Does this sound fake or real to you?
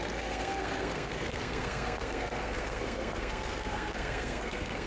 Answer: fake